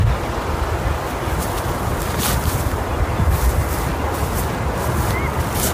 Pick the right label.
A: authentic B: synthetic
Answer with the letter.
A